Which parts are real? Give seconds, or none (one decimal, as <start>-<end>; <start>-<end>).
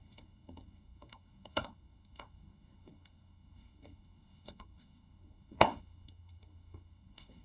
none